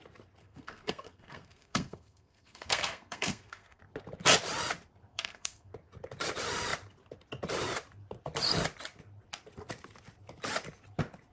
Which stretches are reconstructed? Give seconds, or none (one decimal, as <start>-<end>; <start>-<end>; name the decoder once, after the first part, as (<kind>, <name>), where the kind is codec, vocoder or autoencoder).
0.4-3.8 (codec, SNAC); 5.1-5.7